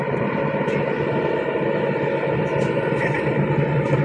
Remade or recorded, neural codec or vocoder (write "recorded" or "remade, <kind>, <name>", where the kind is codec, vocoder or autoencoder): recorded